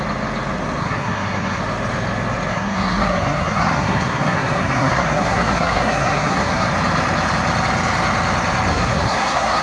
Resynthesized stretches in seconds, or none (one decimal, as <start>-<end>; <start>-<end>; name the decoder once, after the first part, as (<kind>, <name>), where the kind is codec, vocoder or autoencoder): 0.8-1.6 (codec, SNAC); 2.5-6.7; 8.7-9.6